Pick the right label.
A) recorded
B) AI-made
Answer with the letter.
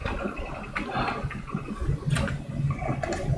A